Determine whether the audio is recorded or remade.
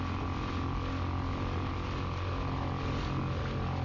recorded